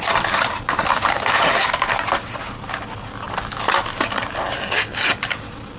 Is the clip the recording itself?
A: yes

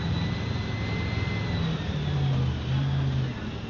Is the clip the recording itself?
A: yes